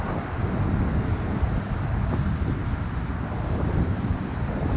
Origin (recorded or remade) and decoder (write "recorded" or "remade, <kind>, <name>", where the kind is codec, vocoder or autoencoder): recorded